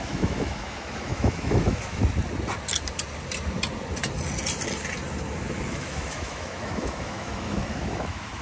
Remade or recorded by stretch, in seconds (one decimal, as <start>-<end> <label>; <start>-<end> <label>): 0.0-2.0 remade; 2.0-5.7 recorded; 5.7-8.4 remade